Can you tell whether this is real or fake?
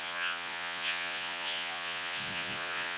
fake